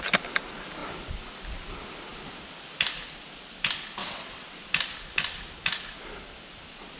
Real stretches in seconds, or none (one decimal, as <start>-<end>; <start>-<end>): 0.0-4.0; 4.6-7.0